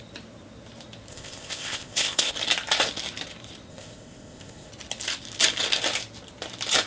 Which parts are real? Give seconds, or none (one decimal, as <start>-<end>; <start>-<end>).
0.0-1.1; 2.3-3.7; 4.7-6.9